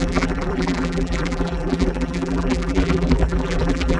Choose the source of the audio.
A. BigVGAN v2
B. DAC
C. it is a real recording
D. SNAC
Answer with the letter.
A